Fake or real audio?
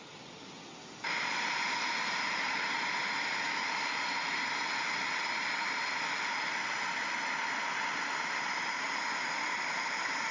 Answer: real